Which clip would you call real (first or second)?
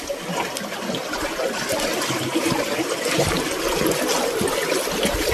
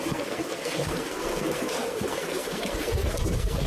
first